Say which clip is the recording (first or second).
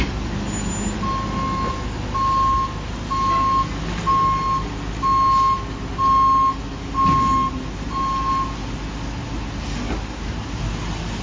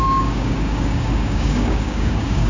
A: first